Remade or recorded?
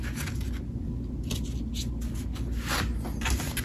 recorded